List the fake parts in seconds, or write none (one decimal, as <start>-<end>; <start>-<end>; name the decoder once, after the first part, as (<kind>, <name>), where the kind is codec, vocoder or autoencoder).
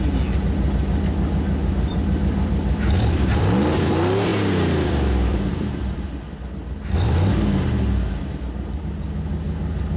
1.6-3.8 (vocoder, BigVGAN v2); 4.3-6.0